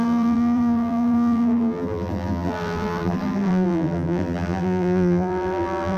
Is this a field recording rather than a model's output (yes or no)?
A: no